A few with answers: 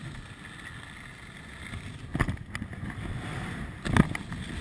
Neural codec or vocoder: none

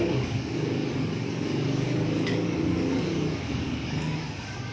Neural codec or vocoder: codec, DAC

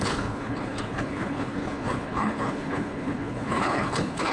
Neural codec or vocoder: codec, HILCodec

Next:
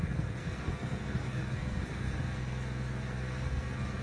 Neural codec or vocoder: codec, SNAC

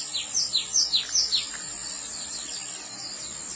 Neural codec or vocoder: none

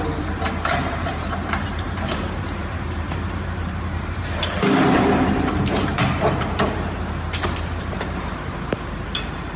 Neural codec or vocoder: vocoder, BigVGAN v2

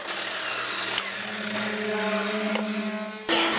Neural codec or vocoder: none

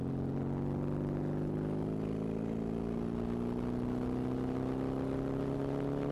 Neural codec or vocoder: none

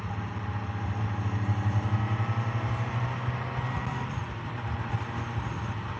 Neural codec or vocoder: none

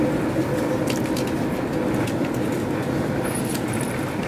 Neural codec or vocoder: none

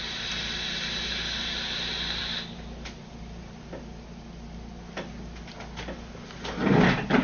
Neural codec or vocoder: none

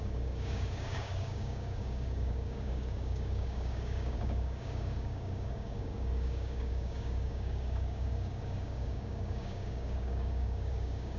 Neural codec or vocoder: codec, DAC